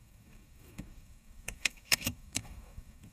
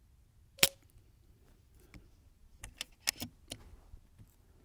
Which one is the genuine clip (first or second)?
second